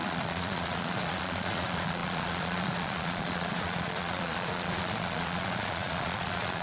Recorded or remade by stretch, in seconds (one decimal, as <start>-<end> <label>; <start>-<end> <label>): 0.0-6.6 remade